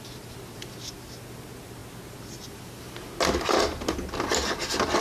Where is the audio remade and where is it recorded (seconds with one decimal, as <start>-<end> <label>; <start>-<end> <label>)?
0.0-5.0 recorded